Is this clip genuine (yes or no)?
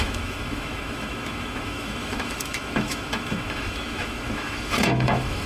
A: no